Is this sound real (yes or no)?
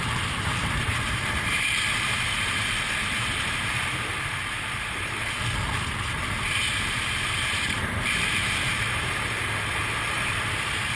no